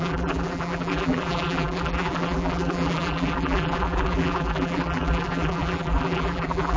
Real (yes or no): no